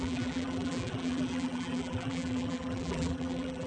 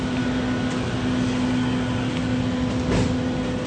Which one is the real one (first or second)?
second